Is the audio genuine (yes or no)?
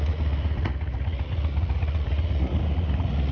no